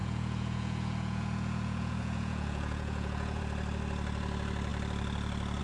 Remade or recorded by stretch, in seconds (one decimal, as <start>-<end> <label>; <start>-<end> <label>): 0.0-3.4 remade; 3.4-5.6 recorded